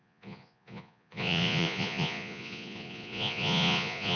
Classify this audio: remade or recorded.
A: remade